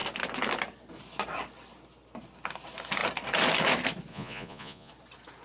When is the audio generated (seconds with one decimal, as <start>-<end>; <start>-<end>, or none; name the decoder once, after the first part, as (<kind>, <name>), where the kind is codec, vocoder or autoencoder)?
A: 4.1-4.9 (vocoder, Vocos)